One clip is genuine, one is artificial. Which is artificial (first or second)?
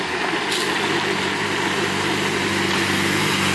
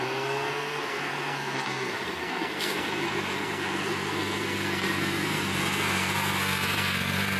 second